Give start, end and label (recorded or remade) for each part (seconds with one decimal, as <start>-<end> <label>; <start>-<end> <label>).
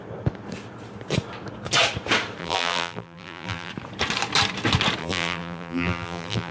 0.0-2.4 recorded; 2.4-3.7 remade; 3.7-5.0 recorded; 5.0-6.5 remade